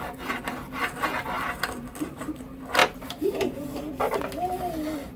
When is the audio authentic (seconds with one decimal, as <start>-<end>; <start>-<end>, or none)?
0.0-2.8; 3.8-5.2